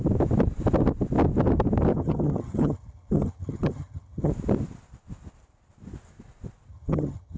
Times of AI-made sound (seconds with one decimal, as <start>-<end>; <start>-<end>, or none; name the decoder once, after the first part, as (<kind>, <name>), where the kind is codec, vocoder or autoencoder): 1.9-4.3 (vocoder, HiFi-GAN); 6.7-7.4

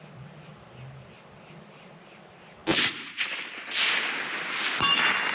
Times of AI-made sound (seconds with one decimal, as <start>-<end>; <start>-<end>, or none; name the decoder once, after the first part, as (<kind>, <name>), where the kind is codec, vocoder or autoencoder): none

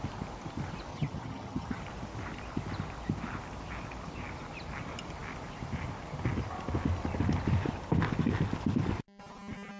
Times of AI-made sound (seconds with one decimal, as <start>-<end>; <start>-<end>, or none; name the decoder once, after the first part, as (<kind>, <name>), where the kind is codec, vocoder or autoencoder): 0.9-1.8 (vocoder, HiFi-GAN)

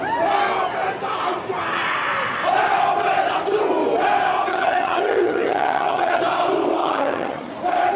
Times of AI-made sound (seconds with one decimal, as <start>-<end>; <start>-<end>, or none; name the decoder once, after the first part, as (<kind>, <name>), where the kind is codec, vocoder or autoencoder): 4.5-6.2 (vocoder, HiFi-GAN); 6.8-7.5

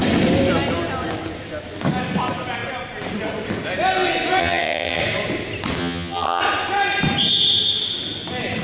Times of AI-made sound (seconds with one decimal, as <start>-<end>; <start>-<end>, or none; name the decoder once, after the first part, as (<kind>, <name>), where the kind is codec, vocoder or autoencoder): 4.4-5.0 (vocoder, HiFi-GAN); 5.8-6.4

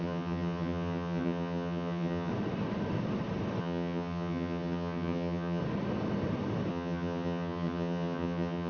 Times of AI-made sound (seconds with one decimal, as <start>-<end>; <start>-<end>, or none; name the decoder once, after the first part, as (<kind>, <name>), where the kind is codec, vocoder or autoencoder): 0.0-2.3 (vocoder, HiFi-GAN); 3.6-5.6; 6.7-8.7